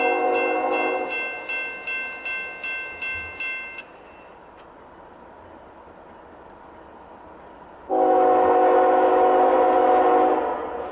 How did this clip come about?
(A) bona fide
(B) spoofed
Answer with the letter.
A